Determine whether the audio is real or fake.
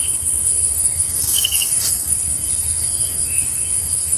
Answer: fake